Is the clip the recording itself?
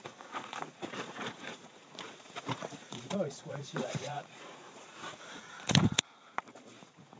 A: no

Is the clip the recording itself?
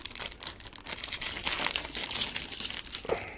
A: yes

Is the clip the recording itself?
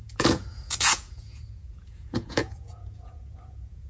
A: no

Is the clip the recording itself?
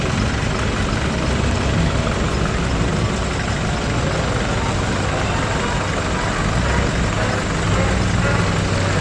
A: yes